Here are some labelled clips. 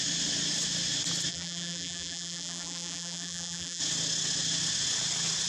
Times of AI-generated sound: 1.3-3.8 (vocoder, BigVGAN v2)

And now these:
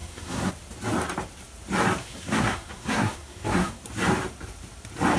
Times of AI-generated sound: 0.0-0.5 (codec, SNAC); 2.0-3.8

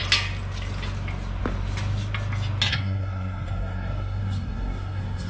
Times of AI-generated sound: 2.7-5.3 (codec, SNAC)

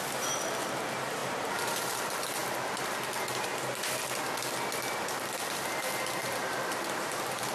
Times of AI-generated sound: 1.2-2.0 (vocoder, BigVGAN v2); 6.2-7.5

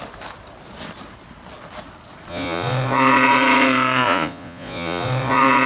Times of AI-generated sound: 2.3-5.7 (vocoder, Vocos)